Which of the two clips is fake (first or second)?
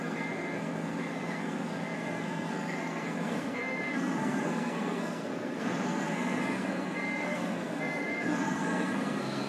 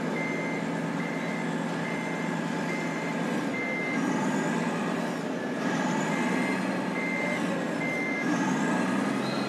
first